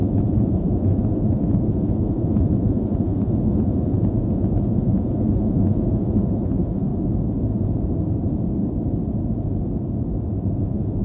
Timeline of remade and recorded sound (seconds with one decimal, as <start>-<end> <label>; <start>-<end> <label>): 0.0-6.9 remade; 6.9-10.6 recorded; 10.6-11.0 remade